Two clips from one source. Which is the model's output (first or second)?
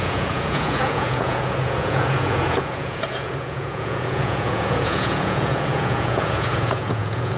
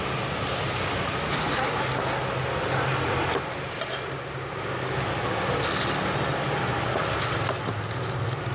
first